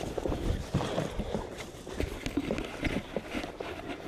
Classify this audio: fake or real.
real